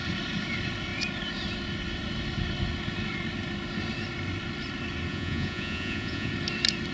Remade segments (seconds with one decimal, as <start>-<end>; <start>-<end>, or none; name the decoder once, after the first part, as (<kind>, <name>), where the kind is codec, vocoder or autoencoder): 5.1-6.3 (vocoder, Vocos)